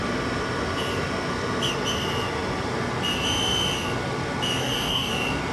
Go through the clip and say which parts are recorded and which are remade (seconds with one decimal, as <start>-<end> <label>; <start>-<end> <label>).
0.0-4.6 recorded; 4.6-5.1 remade; 5.1-5.5 recorded